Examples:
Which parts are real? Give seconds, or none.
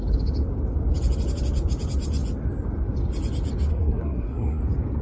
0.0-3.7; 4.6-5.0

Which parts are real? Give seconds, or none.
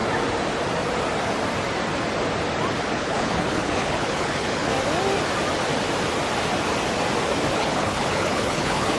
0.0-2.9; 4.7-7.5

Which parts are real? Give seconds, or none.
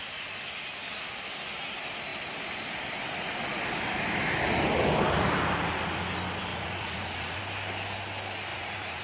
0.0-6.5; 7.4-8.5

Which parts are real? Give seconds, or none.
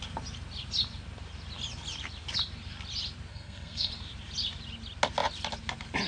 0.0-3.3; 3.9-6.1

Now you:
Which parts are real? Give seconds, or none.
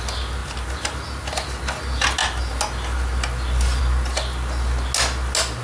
0.0-5.6